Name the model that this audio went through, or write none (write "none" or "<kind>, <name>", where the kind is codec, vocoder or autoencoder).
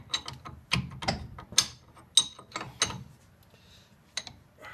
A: none